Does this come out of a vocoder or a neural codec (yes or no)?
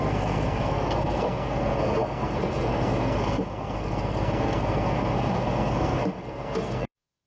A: yes